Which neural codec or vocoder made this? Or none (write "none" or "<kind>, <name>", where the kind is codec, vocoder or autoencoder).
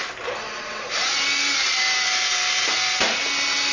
none